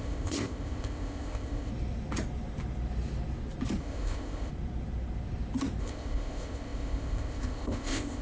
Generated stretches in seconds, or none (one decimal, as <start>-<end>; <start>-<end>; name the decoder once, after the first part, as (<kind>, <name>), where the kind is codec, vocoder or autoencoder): 0.0-1.7 (codec, ZipCodec); 3.8-4.5; 5.8-8.2